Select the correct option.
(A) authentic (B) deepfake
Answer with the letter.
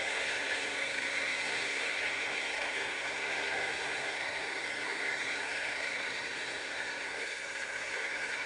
B